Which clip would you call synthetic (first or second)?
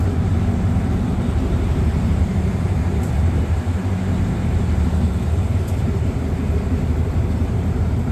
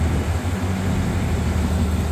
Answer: first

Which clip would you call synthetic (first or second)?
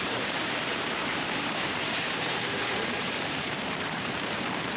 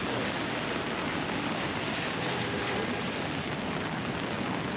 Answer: first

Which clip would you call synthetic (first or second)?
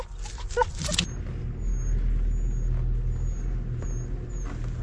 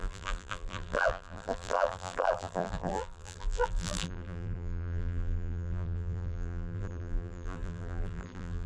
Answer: second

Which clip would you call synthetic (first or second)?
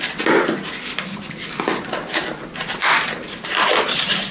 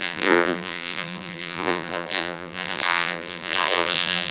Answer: second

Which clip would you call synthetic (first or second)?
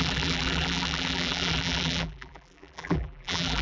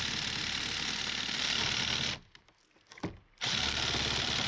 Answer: first